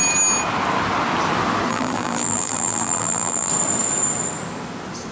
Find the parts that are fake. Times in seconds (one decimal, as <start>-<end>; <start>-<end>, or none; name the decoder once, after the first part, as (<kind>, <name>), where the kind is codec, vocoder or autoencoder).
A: 1.7-3.5 (vocoder, BigVGAN v2)